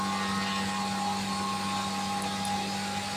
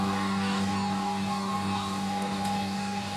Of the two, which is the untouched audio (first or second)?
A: first